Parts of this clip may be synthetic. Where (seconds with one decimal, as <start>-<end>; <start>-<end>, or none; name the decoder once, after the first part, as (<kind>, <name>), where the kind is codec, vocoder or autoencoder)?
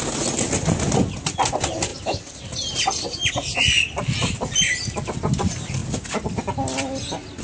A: none